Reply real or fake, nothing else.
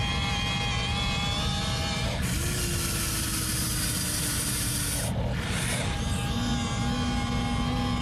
real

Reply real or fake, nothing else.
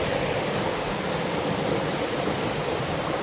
real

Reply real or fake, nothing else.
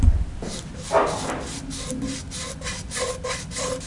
real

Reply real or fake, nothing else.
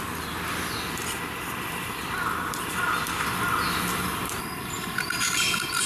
fake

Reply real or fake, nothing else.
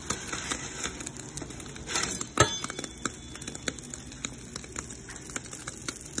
real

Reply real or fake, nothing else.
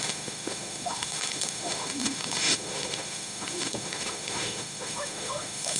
fake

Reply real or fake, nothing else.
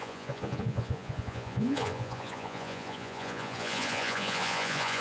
fake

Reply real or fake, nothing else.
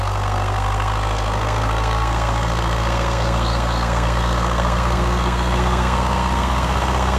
fake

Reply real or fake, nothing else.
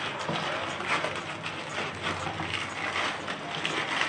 real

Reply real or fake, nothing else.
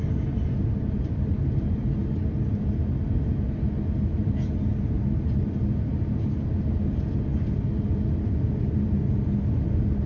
real